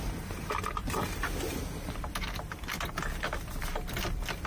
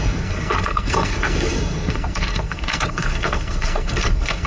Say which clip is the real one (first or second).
first